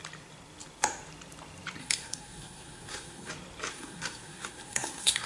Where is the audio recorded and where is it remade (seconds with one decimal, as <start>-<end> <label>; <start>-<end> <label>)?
0.0-1.8 recorded; 1.8-3.3 remade; 3.3-3.7 recorded; 3.7-5.3 remade